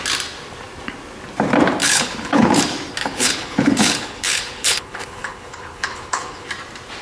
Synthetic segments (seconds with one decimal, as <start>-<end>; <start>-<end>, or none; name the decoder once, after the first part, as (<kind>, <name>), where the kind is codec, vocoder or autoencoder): 1.8-2.6 (codec, HILCodec); 3.0-6.5